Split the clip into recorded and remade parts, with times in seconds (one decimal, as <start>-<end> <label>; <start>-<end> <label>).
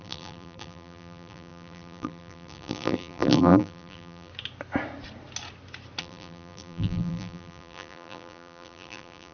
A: 0.0-4.3 remade; 4.3-6.0 recorded; 6.0-9.3 remade